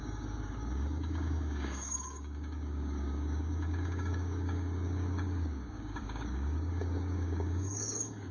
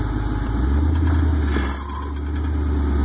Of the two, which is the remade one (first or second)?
first